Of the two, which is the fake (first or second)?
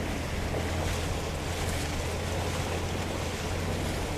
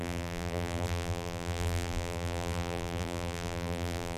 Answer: second